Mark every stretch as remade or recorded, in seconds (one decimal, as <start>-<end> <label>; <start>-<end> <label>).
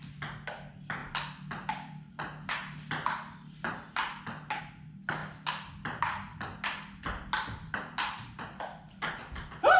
0.0-9.8 recorded